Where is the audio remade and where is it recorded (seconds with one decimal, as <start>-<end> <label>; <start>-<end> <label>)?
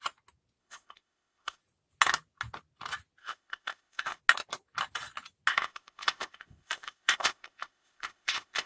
0.0-0.6 recorded; 0.6-1.6 remade; 1.6-3.2 recorded; 3.2-4.2 remade; 4.2-5.5 recorded; 5.5-8.7 remade